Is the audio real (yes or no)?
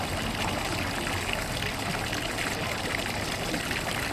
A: yes